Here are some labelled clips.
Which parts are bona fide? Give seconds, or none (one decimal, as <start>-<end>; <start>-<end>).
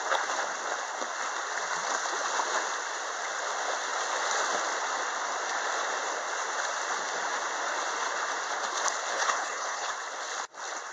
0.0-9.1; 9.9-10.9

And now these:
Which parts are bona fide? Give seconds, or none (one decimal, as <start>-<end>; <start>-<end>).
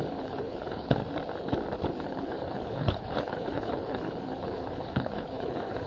1.0-1.9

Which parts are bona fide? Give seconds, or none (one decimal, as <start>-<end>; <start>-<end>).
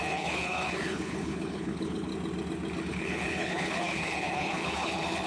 2.1-2.9